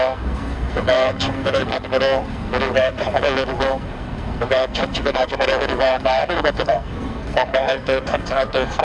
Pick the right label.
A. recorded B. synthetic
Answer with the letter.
B